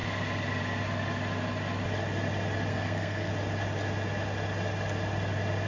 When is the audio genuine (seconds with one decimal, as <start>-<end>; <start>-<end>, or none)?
0.0-2.7; 3.3-5.7